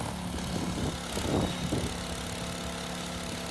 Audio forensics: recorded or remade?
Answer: recorded